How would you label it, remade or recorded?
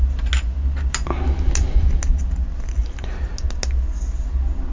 recorded